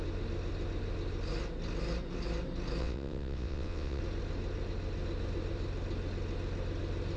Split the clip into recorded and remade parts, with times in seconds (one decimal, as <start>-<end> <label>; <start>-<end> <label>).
0.0-2.8 recorded; 2.8-4.0 remade; 4.0-7.2 recorded